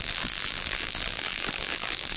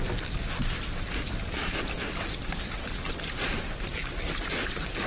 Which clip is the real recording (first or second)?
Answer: second